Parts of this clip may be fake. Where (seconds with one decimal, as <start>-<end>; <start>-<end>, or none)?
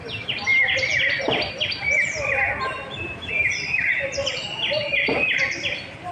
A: 0.0-6.1